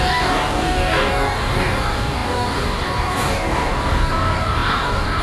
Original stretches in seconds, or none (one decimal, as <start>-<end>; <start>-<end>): none